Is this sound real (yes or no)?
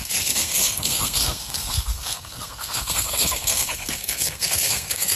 no